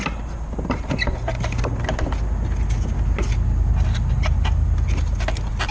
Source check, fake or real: real